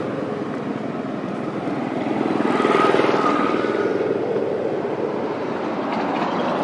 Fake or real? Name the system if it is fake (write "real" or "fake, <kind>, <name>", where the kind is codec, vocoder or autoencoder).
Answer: real